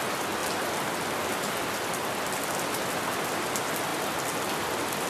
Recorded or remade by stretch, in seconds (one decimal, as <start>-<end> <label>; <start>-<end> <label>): 0.0-5.1 recorded